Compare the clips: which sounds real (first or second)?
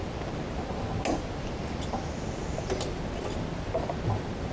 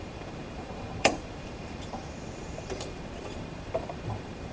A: first